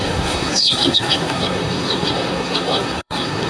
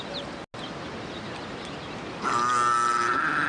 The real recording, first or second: second